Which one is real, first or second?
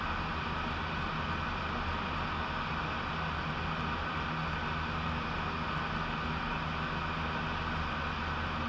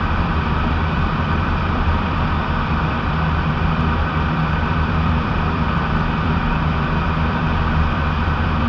first